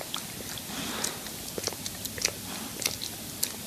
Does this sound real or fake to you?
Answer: real